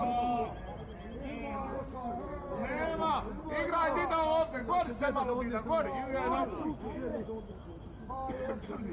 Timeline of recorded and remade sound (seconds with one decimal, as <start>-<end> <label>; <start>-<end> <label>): 0.0-7.1 recorded; 7.1-8.1 remade; 8.1-8.9 recorded